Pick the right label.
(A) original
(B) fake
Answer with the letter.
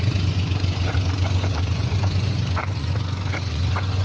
B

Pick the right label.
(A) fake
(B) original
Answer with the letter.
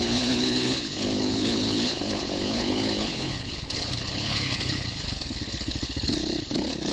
A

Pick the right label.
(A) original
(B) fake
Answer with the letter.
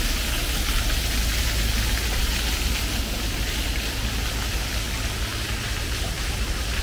A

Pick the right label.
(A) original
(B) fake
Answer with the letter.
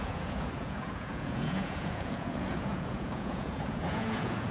B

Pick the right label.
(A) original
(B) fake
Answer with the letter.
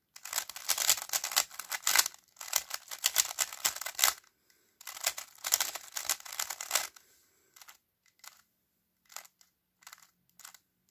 A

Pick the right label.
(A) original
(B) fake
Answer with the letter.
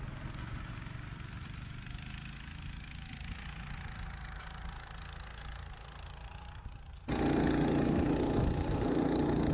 A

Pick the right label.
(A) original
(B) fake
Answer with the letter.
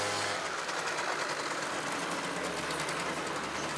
A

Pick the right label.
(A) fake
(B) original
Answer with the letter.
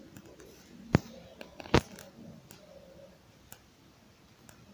B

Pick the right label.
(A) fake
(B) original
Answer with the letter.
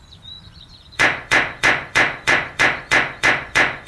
A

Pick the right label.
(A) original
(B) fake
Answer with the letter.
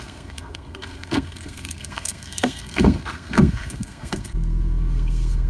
B